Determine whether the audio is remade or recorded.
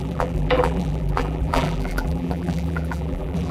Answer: remade